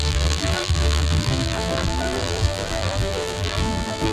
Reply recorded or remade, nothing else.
remade